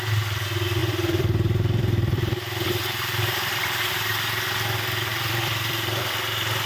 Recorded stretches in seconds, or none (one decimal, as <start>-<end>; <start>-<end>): 0.0-0.8; 3.9-5.1; 6.0-6.7